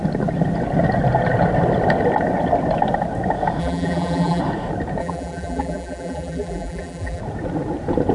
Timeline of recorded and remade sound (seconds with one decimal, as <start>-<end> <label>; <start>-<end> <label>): 0.0-3.6 recorded; 3.6-4.4 remade; 4.4-5.0 recorded; 5.0-7.2 remade; 7.2-8.1 recorded